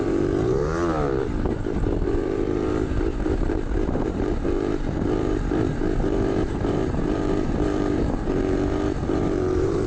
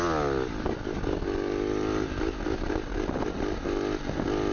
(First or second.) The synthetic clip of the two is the first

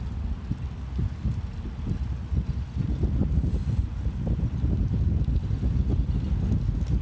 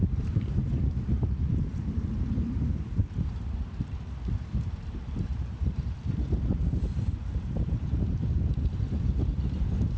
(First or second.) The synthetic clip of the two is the second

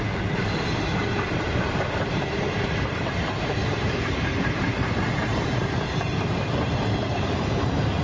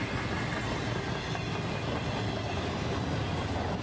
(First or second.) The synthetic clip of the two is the first